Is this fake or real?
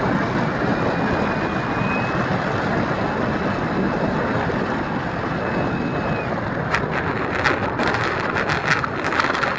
real